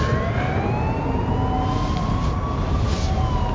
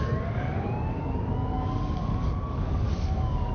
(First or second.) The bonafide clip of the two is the first